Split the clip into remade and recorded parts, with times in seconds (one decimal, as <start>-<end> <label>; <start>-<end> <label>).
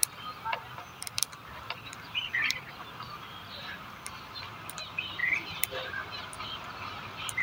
0.0-4.4 remade; 4.4-5.2 recorded; 5.2-5.9 remade; 5.9-7.4 recorded